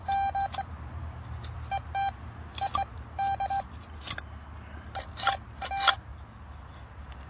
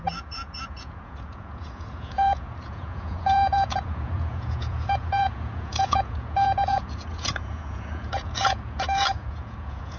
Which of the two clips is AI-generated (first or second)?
second